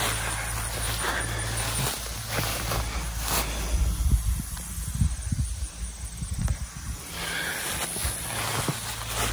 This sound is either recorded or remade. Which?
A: recorded